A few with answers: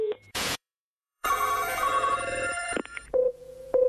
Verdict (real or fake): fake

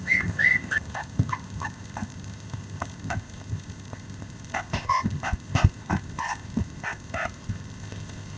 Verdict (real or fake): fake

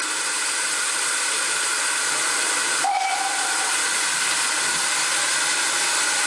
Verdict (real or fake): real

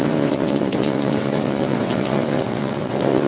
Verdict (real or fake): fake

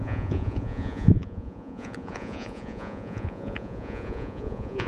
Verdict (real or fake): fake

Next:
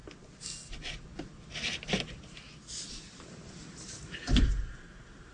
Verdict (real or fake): real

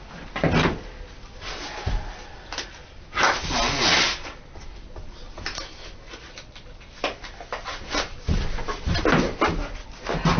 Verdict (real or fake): real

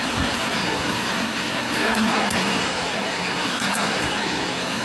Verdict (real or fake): fake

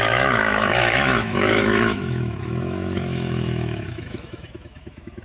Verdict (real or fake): fake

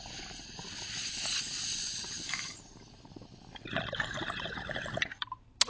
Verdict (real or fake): real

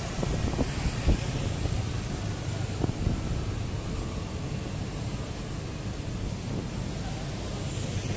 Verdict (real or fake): real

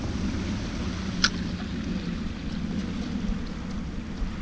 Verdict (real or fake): real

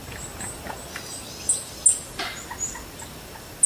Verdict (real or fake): real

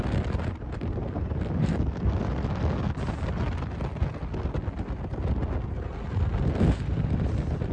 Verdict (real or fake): real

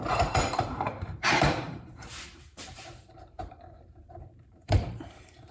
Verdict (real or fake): fake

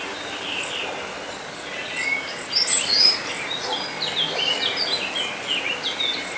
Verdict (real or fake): real